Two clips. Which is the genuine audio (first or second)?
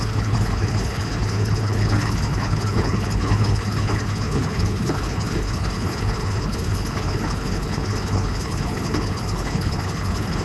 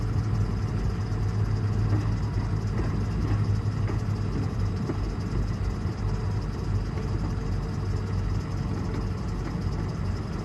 second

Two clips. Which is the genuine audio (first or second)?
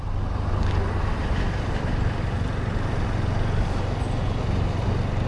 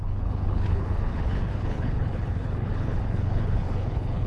first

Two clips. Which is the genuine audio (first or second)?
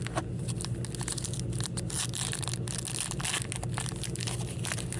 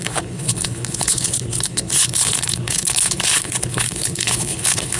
first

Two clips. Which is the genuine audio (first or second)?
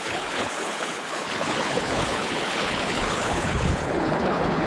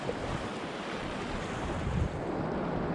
second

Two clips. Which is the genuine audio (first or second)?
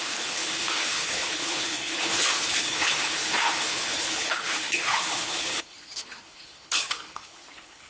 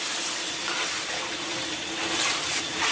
second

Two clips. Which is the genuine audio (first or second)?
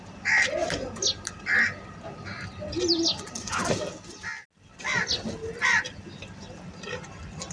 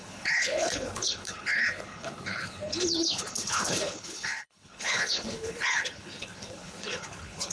first